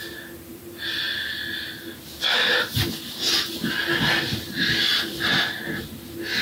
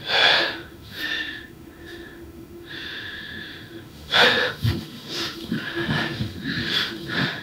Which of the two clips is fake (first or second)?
second